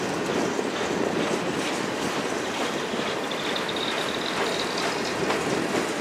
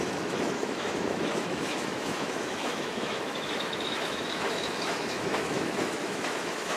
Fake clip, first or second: second